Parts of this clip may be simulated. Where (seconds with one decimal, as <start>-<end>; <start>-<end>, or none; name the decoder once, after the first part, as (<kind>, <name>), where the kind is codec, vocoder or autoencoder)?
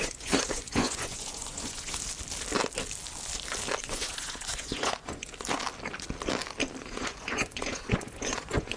0.0-1.9 (vocoder, Vocos); 3.8-5.3; 6.8-8.8